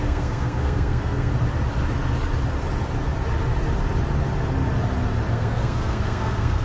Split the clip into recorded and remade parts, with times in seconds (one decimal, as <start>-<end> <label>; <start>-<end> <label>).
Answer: 0.0-1.3 remade; 1.3-5.3 recorded; 5.3-6.6 remade